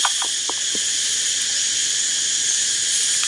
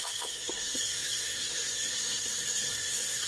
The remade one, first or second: second